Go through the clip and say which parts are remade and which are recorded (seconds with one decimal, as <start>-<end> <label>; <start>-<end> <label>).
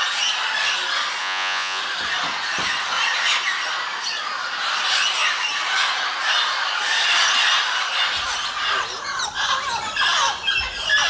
0.0-1.2 recorded; 1.2-1.8 remade; 1.8-11.1 recorded